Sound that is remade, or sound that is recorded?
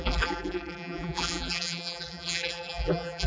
remade